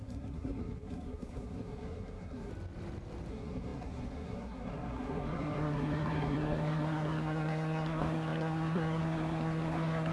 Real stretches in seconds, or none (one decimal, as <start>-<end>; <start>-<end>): 2.5-3.3